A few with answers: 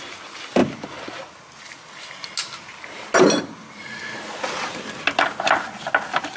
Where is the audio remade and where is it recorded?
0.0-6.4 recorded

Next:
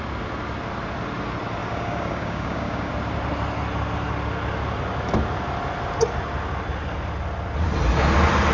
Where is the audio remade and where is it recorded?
0.0-1.6 recorded; 1.6-2.9 remade; 2.9-8.5 recorded